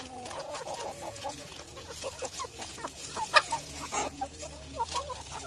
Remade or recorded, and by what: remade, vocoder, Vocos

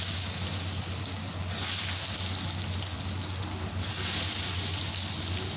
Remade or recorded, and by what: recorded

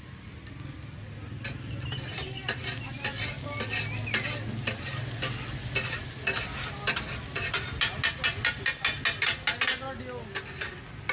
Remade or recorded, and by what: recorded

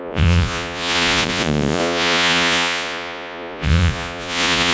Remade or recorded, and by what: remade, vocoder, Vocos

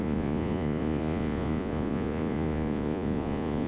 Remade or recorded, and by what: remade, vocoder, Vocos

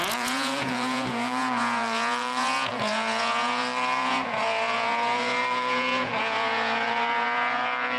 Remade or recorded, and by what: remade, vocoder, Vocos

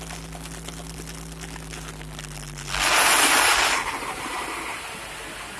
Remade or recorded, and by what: recorded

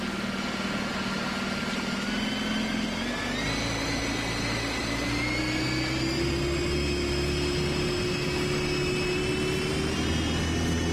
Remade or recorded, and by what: recorded